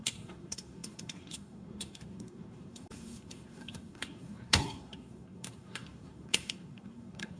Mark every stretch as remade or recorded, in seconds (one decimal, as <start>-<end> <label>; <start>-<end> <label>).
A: 0.0-7.4 remade